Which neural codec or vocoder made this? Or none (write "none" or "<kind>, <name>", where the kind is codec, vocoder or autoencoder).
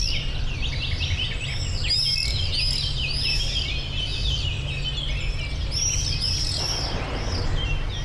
none